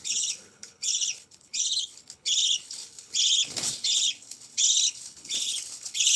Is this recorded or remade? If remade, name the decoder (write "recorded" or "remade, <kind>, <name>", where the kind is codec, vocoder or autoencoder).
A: remade, codec, HILCodec